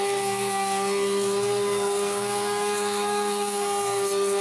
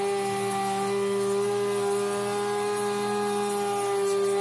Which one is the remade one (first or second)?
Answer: first